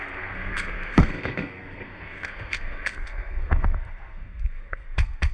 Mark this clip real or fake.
fake